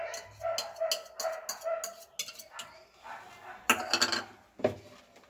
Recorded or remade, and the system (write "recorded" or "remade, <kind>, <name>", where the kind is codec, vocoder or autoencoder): recorded